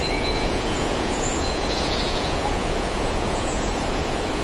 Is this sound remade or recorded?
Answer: remade